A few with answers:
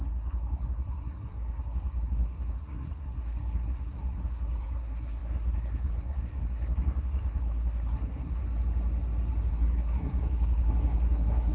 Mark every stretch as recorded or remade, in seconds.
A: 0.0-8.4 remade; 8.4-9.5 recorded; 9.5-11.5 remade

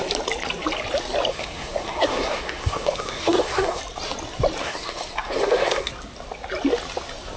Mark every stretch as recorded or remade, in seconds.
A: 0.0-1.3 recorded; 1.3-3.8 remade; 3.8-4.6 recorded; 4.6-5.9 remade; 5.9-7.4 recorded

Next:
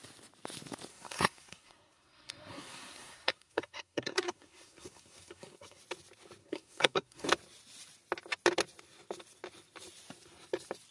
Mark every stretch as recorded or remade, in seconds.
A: 0.0-0.9 recorded; 0.9-5.8 remade; 5.8-6.4 recorded; 6.4-7.3 remade; 7.3-10.9 recorded

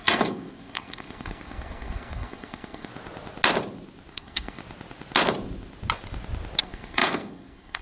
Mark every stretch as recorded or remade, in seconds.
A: 0.0-2.9 remade; 2.9-4.1 recorded; 4.1-4.6 remade; 4.6-6.6 recorded; 6.6-7.8 remade

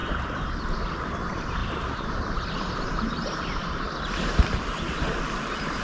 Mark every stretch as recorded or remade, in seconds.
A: 0.0-5.8 recorded

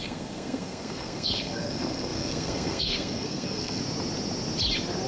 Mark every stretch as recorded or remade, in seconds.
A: 0.0-3.8 remade; 3.8-5.1 recorded